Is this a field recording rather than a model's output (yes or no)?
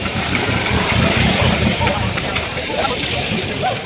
no